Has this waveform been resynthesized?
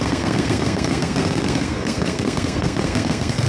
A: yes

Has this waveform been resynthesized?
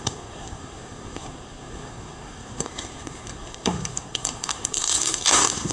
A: yes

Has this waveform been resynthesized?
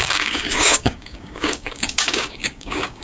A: yes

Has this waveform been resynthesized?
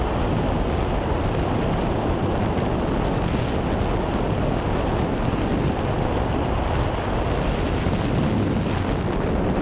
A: no